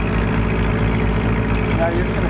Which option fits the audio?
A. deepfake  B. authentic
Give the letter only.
B